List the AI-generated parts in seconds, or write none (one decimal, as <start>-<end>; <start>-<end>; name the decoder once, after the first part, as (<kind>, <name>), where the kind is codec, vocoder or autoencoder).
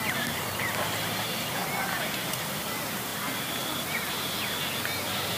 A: 0.0-1.6 (vocoder, BigVGAN v2); 2.6-3.1; 4.1-5.4